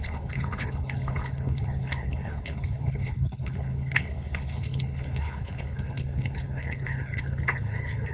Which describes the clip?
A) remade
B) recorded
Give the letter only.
A